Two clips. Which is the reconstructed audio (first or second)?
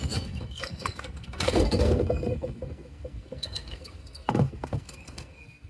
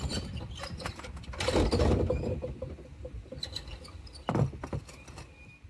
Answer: first